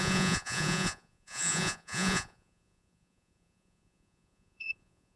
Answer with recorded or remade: remade